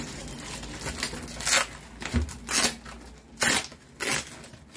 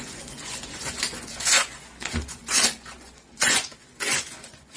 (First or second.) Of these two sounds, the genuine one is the first